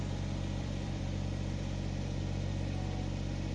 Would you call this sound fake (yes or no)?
yes